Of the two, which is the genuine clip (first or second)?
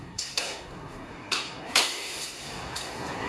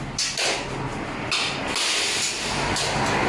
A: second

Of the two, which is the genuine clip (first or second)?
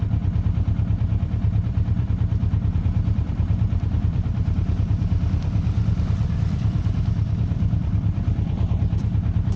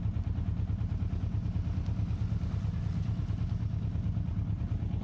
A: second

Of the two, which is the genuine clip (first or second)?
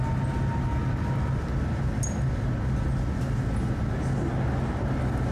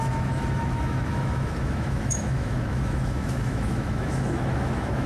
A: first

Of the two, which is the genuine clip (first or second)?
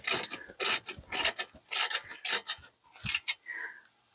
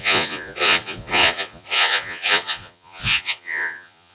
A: first